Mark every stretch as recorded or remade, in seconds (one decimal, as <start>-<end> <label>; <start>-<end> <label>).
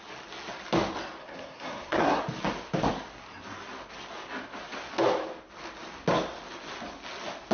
0.0-1.2 recorded; 1.2-2.2 remade; 2.2-7.5 recorded